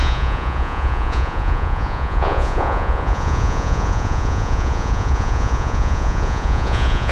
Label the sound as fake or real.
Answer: fake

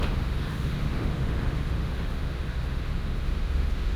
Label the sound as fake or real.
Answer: fake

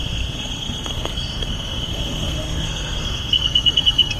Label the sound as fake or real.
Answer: fake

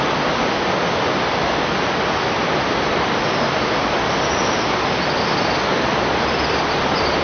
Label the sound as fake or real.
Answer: real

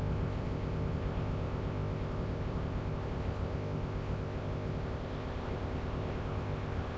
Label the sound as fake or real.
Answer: fake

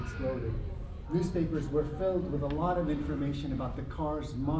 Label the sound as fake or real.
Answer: real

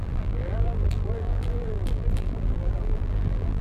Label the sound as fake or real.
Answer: fake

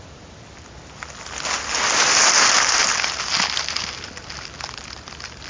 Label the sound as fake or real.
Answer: real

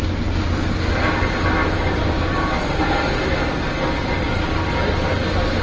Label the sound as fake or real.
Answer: real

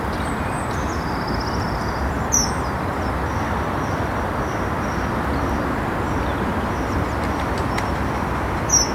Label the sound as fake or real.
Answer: real